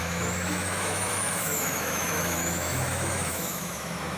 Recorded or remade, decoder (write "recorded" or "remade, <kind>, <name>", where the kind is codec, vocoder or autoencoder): remade, autoencoder, DAC-VAE